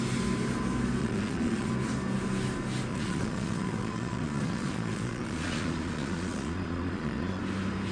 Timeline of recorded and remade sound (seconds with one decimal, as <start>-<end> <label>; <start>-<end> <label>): 0.0-1.0 recorded; 1.0-1.7 remade; 1.7-2.9 recorded; 2.9-7.4 remade; 7.4-7.9 recorded